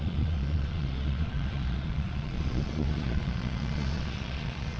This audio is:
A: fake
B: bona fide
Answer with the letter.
A